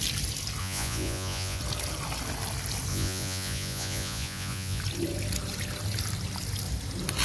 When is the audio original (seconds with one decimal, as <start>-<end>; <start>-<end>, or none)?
0.0-0.6; 1.6-2.9; 4.8-7.2